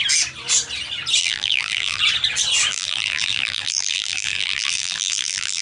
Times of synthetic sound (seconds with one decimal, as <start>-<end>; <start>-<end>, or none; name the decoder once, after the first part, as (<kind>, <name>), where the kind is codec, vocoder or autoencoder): 1.2-2.0 (vocoder, BigVGAN v2); 2.7-5.6